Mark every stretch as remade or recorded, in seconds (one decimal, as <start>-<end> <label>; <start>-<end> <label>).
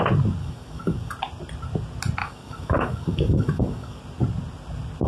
0.0-0.4 recorded; 0.4-1.1 remade; 1.1-2.2 recorded; 2.2-4.0 remade; 4.0-5.1 recorded